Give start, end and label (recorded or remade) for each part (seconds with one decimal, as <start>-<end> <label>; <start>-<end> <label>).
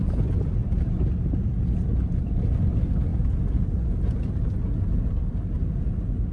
0.0-6.3 recorded